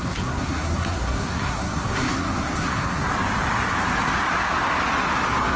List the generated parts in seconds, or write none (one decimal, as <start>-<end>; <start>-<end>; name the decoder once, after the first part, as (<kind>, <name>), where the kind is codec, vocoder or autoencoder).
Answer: 0.0-3.1 (codec, SNAC)